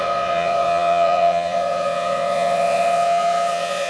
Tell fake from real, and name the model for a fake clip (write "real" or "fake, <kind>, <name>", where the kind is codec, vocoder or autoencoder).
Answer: fake, vocoder, Vocos